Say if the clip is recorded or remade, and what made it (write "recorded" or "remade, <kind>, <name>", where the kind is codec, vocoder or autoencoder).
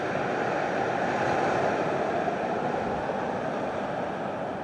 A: recorded